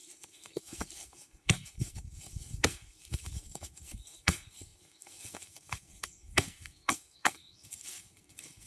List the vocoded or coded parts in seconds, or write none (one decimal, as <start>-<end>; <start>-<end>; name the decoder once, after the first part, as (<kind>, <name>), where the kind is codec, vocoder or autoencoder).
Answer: 0.0-8.7 (codec, SNAC)